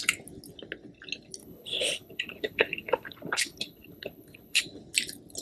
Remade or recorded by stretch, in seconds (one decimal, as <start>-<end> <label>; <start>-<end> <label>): 0.0-1.4 recorded; 1.4-4.6 remade; 4.6-5.4 recorded